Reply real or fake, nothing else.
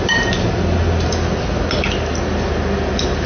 real